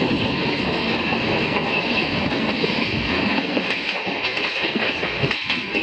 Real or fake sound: fake